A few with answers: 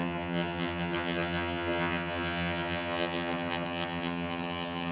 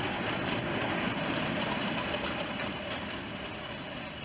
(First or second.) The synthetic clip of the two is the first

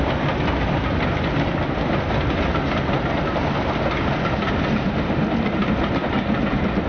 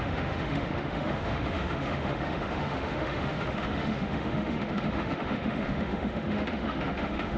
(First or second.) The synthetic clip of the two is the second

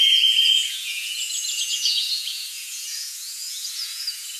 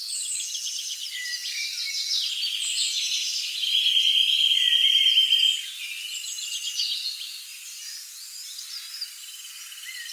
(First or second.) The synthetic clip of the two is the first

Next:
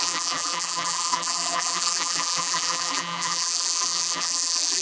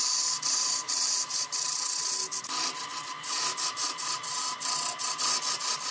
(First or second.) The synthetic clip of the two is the first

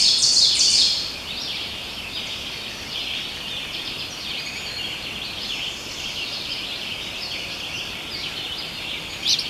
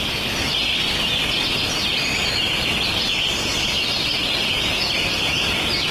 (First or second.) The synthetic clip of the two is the first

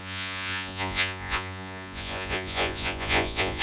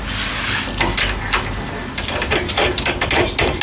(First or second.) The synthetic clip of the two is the first